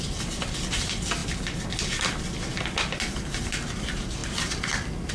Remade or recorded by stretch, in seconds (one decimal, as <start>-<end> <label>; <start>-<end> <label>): 0.0-5.1 recorded